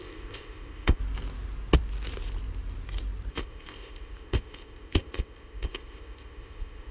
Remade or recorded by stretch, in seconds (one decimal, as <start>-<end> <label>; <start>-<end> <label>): 0.0-1.0 remade; 1.0-3.3 recorded; 3.3-6.9 remade